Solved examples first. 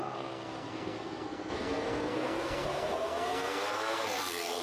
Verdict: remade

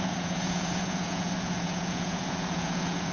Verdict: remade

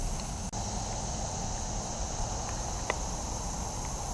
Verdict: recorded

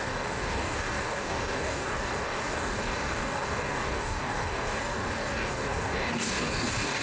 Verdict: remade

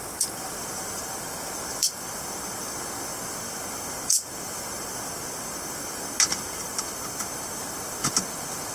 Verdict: recorded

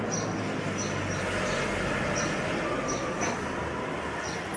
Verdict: recorded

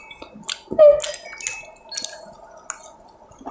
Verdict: recorded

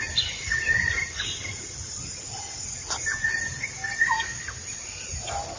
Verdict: recorded